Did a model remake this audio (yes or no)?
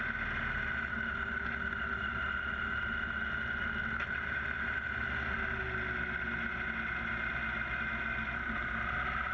no